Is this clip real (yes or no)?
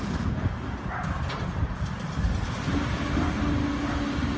yes